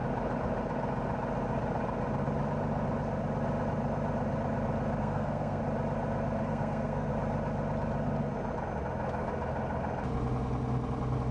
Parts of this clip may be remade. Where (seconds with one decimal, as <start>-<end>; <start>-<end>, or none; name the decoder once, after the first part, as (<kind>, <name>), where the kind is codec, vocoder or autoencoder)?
5.0-5.6 (codec, SNAC); 6.4-7.1